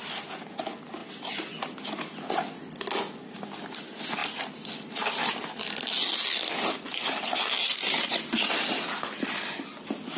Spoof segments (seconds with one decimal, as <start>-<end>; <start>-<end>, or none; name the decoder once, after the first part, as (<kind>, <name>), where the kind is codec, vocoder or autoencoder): none